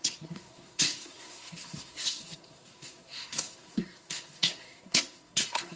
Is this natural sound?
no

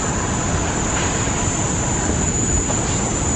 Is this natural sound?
yes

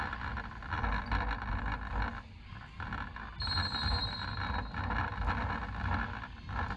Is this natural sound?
yes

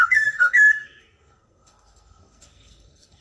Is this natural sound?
no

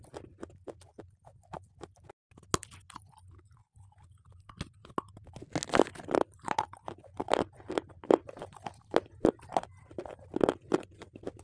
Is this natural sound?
yes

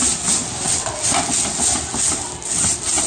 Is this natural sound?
yes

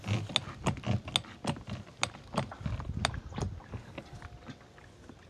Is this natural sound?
yes